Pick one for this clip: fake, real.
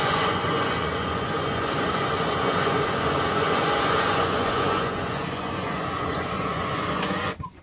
fake